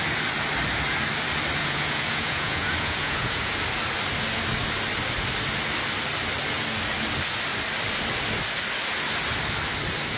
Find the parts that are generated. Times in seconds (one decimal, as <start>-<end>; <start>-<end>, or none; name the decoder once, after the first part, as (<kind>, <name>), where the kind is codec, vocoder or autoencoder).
1.6-3.5 (vocoder, Vocos)